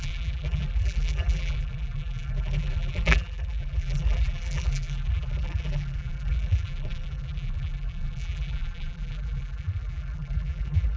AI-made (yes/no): yes